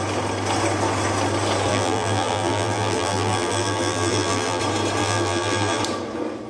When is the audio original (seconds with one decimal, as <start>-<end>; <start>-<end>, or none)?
0.0-1.7; 4.6-5.0; 5.8-6.5